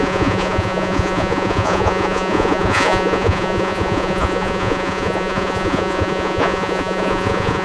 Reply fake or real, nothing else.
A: fake